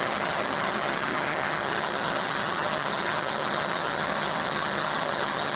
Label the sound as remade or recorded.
remade